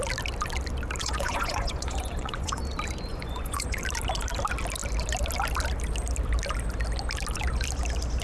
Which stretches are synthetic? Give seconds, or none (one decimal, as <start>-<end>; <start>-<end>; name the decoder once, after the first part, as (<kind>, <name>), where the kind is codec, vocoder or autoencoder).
1.0-2.6 (vocoder, Vocos); 3.1-3.8